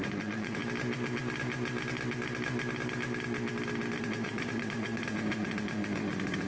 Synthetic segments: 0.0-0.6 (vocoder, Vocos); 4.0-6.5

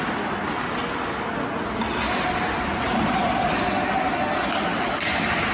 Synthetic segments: none